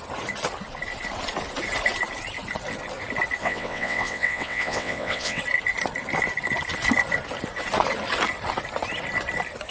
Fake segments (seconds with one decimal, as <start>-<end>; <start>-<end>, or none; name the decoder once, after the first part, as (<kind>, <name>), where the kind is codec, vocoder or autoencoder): 3.4-5.4 (vocoder, WaveNeXt)